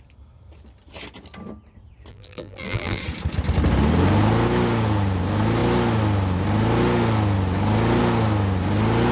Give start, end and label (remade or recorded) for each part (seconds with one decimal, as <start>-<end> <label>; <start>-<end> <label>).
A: 0.0-2.1 recorded; 2.1-3.0 remade; 3.0-9.1 recorded